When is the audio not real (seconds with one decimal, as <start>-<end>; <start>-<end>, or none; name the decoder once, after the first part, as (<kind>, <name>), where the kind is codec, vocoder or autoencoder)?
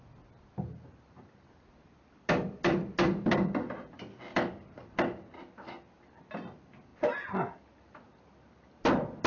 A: none